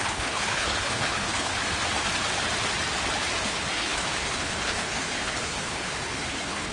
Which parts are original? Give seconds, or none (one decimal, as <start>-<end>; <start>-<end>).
1.5-3.4